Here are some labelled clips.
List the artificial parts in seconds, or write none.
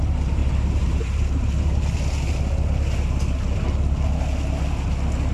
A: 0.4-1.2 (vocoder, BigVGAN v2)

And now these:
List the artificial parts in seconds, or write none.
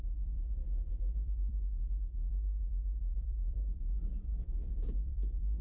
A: 0.6-1.6 (vocoder, BigVGAN v2); 3.1-5.6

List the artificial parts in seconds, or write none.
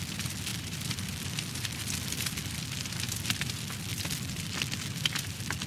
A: 0.0-3.9 (vocoder, BigVGAN v2); 4.9-5.7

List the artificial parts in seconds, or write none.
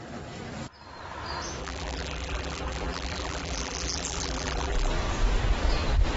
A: 1.6-4.9 (vocoder, BigVGAN v2)